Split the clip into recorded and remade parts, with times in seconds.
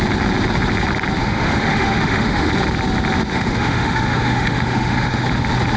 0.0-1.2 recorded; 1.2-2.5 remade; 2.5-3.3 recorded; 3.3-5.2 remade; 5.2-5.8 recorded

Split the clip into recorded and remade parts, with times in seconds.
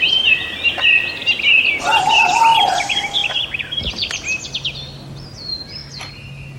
0.0-6.6 recorded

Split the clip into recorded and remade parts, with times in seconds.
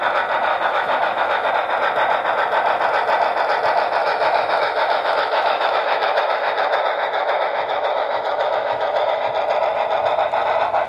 0.0-0.5 recorded; 0.5-1.5 remade; 1.5-4.0 recorded; 4.0-9.2 remade; 9.2-10.9 recorded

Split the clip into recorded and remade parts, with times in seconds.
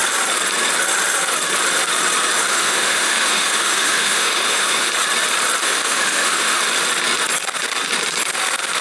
0.0-2.5 recorded; 2.5-4.9 remade; 4.9-5.6 recorded; 5.6-6.6 remade; 6.6-8.8 recorded